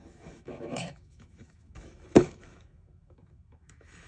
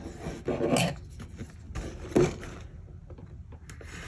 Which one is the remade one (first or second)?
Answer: first